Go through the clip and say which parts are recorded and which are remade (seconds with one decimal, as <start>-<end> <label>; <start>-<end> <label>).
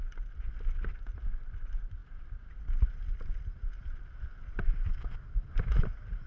0.0-2.0 recorded; 2.0-5.8 remade; 5.8-6.3 recorded